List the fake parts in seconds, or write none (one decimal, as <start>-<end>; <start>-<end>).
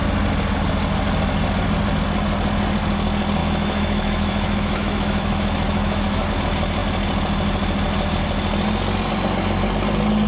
3.4-6.3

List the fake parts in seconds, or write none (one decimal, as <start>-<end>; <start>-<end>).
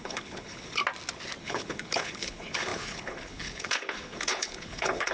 0.0-0.8; 1.4-5.1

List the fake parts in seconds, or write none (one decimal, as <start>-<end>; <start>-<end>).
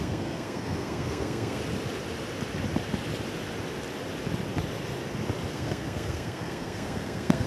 0.0-1.6; 5.5-7.5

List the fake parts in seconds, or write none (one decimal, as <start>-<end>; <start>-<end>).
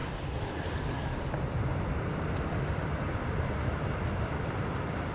none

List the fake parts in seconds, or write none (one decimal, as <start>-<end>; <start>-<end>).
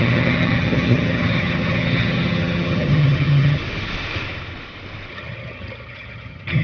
0.0-3.6; 5.1-6.6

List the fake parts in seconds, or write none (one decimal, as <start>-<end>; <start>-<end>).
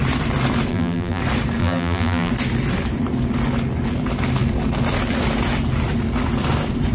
0.7-1.2; 1.6-2.3